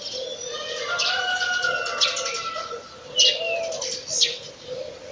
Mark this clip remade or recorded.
recorded